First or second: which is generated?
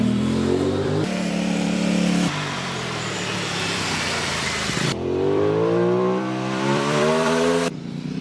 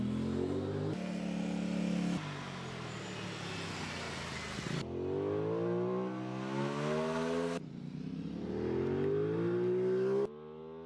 first